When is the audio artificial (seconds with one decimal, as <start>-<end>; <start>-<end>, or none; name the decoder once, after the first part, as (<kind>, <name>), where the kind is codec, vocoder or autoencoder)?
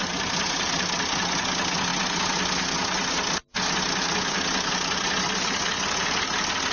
none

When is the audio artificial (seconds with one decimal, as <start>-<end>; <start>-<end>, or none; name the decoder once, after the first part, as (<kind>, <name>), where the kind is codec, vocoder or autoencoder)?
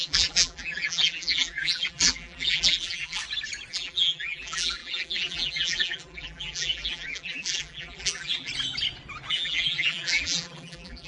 0.0-3.2 (vocoder, BigVGAN v2); 3.7-8.5; 9.3-11.1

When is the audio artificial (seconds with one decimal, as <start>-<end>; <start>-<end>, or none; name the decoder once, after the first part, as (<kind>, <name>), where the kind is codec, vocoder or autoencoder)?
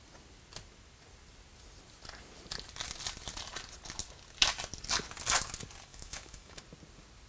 5.9-6.6 (autoencoder, DAC-VAE)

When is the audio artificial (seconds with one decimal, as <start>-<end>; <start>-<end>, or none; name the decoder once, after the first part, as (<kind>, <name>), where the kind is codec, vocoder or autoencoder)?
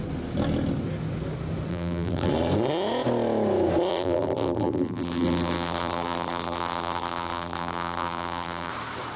1.7-2.3 (vocoder, BigVGAN v2); 3.9-8.7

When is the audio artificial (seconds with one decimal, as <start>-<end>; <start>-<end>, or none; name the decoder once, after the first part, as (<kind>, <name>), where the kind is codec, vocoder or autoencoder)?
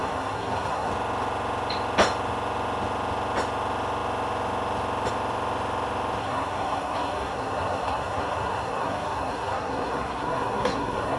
0.0-0.9 (codec, SNAC); 6.2-11.2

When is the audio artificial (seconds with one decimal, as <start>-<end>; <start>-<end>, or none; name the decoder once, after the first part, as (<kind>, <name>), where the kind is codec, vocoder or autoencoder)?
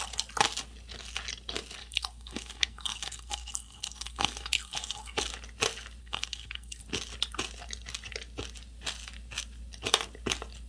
1.8-5.3 (codec, SNAC); 6.0-6.8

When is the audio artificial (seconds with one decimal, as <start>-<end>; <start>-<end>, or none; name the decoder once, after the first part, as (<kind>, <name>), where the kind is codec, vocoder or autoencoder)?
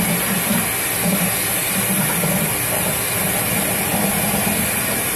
none